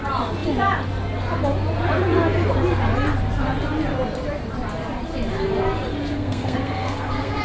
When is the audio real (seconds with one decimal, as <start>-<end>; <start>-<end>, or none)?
0.0-6.2